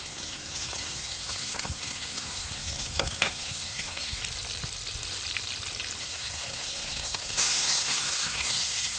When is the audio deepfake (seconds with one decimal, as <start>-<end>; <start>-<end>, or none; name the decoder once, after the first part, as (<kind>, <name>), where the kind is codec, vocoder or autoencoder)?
0.0-4.2 (codec, SNAC); 6.0-9.0